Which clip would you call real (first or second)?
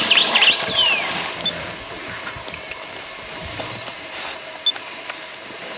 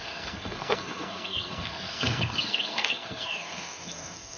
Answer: first